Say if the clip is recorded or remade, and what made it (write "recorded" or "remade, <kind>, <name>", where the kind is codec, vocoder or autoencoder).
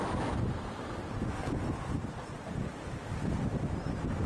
recorded